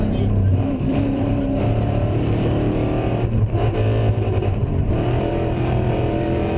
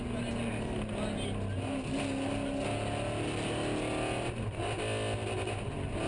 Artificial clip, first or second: first